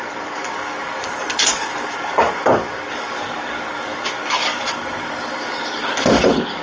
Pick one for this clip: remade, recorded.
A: remade